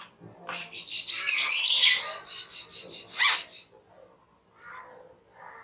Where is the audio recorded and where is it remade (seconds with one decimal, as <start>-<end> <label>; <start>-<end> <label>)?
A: 0.0-5.6 recorded